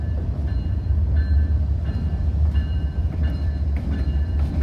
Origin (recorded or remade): remade